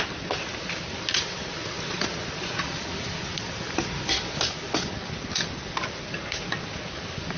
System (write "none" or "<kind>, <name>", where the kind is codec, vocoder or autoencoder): none